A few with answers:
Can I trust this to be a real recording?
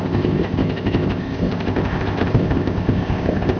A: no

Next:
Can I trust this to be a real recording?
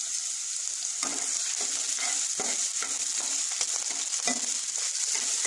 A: yes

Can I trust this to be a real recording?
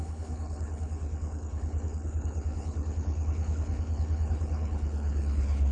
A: no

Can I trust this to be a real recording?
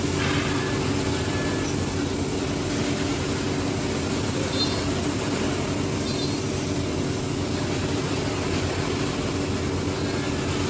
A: yes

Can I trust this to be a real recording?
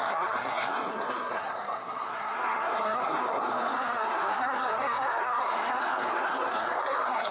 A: no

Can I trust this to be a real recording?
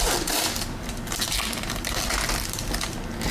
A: yes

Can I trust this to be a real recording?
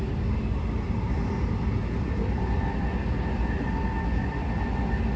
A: yes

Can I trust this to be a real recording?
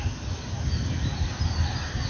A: yes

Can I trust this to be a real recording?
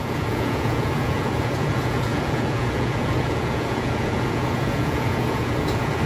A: no